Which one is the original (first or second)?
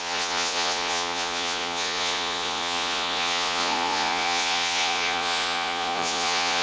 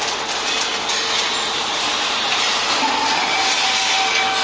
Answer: second